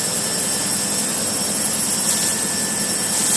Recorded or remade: recorded